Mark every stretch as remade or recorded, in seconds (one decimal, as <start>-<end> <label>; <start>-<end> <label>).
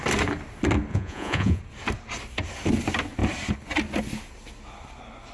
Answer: 0.0-0.9 recorded; 0.9-1.6 remade; 1.6-5.3 recorded